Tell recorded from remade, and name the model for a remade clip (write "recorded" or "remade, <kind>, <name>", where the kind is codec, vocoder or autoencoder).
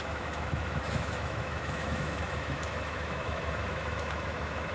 remade, autoencoder, DAC-VAE